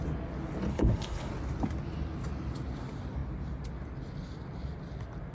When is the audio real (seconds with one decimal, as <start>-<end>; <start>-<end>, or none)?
0.0-0.7; 1.3-5.3